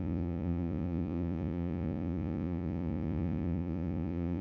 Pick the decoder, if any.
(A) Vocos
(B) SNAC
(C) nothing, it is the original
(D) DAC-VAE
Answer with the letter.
A